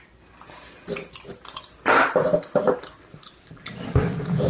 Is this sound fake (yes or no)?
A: no